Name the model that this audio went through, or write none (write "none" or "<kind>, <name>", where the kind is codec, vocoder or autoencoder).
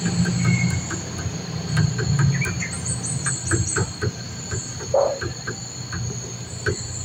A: none